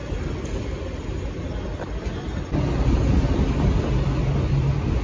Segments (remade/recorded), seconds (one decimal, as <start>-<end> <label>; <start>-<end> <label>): 0.0-5.0 recorded